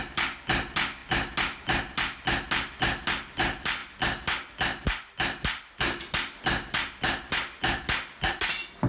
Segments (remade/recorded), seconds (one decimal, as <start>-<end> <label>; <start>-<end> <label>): 0.0-8.9 recorded